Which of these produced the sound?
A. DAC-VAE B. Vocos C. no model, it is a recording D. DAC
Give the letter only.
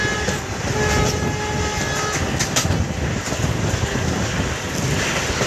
C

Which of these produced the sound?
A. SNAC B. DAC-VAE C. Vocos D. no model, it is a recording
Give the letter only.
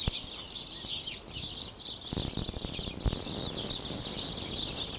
D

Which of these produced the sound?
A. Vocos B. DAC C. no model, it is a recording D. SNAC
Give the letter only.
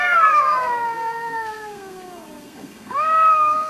D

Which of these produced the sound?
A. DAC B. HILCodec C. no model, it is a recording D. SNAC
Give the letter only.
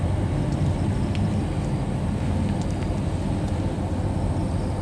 C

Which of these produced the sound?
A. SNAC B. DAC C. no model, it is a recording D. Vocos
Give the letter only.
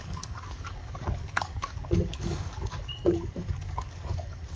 B